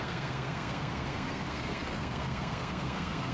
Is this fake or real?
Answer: fake